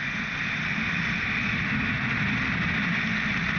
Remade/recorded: recorded